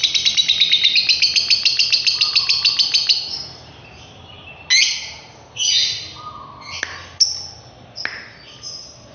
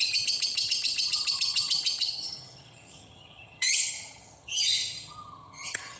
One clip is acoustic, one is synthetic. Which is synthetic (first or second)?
second